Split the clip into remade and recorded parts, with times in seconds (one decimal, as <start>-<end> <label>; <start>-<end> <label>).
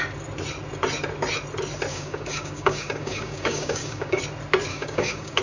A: 0.0-1.9 recorded; 1.9-4.2 remade; 4.2-4.7 recorded; 4.7-5.4 remade